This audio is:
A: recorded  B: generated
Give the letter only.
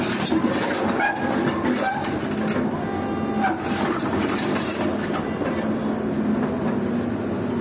A